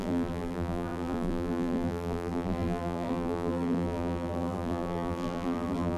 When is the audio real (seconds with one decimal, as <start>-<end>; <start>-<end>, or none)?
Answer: none